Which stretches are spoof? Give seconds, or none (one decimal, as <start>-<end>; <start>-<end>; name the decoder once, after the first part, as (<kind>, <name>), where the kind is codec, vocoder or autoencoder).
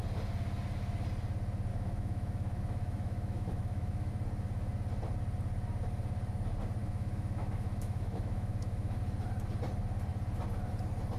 1.7-4.1 (autoencoder, DAC-VAE); 6.8-9.0